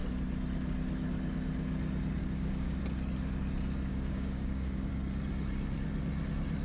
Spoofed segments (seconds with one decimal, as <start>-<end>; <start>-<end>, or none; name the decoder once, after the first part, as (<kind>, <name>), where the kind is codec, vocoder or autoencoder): 2.2-2.8 (codec, DAC); 3.9-4.9